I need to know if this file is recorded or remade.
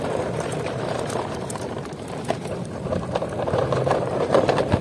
remade